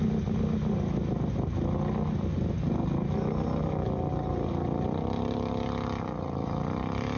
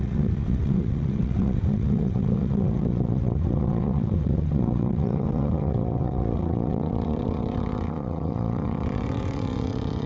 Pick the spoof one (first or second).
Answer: second